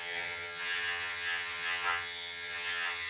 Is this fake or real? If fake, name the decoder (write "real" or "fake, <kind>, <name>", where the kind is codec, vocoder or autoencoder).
fake, vocoder, HiFi-GAN